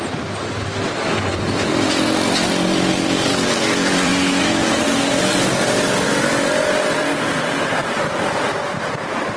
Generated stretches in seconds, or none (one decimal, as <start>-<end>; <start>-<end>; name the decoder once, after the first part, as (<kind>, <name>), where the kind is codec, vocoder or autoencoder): 0.0-4.1 (vocoder, BigVGAN v2); 7.4-9.4